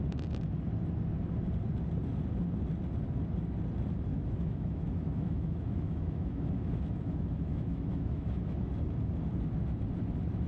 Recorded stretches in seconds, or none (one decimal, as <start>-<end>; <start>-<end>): 0.0-4.1; 8.7-10.5